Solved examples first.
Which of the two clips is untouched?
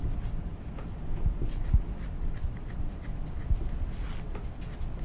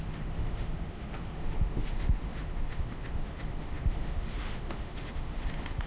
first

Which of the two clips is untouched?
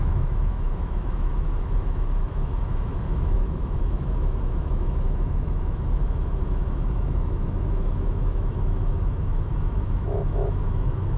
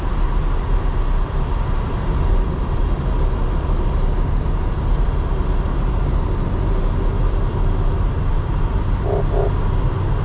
second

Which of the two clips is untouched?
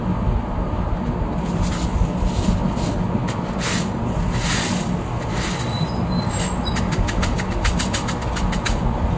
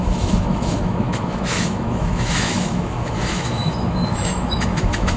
first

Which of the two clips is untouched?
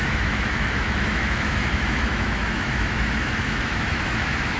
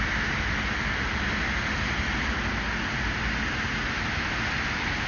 second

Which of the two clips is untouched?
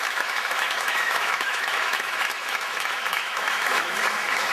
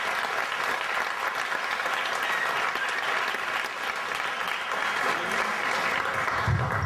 second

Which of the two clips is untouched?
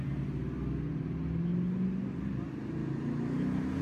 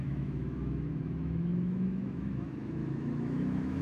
first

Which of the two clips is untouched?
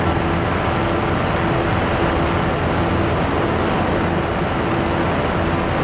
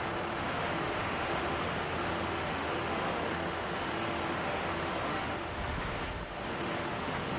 first